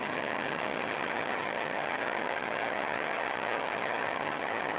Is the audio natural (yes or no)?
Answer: no